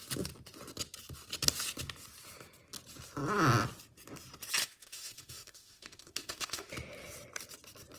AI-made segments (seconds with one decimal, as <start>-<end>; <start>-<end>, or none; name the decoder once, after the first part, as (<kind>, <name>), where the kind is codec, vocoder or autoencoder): 4.6-6.7 (autoencoder, DAC-VAE)